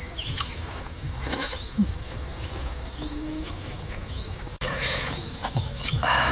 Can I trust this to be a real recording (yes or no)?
no